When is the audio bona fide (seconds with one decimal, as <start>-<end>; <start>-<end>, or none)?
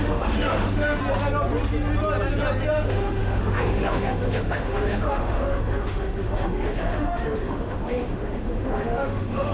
1.0-2.7